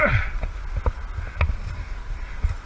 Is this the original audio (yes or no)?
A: yes